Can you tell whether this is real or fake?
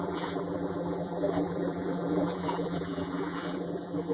fake